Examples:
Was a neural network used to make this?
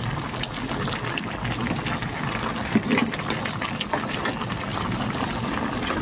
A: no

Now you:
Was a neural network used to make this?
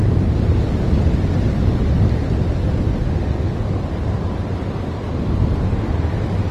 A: no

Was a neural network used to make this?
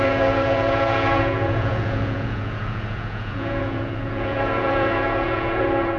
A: yes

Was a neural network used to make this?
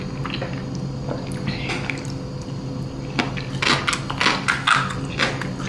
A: no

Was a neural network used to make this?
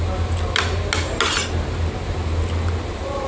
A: no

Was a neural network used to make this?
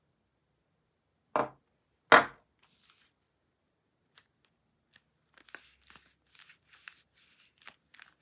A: no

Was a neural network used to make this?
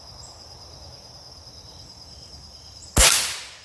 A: no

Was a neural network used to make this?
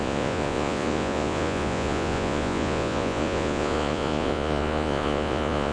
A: yes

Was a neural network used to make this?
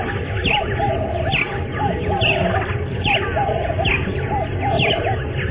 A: no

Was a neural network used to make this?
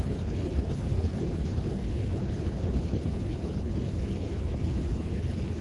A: yes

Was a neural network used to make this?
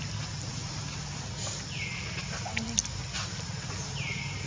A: no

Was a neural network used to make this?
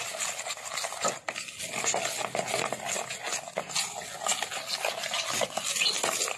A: no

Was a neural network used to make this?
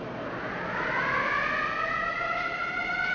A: no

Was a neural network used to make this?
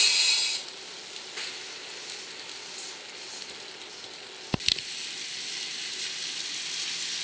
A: no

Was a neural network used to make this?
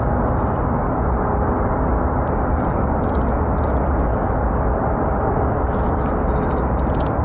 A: no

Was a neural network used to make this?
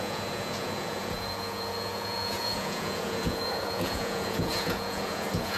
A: yes